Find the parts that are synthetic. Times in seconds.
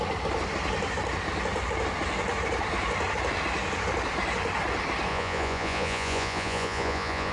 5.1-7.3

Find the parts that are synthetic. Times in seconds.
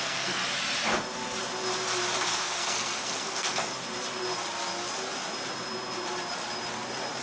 0.0-0.4; 2.3-3.7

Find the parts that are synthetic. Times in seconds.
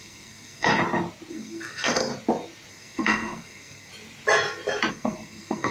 0.0-0.7; 1.3-2.1; 2.7-3.9; 4.9-5.7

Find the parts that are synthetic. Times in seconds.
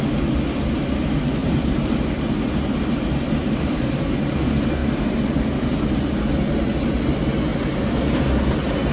1.4-4.3; 7.5-8.2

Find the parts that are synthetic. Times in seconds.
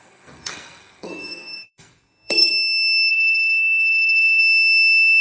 0.0-2.5; 3.1-4.4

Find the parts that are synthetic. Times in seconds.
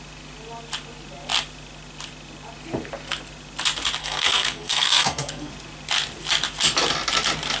4.0-5.5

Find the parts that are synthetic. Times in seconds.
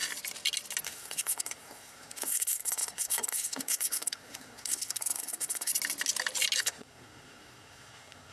0.8-5.7; 6.6-8.3